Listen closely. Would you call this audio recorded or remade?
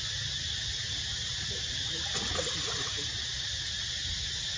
recorded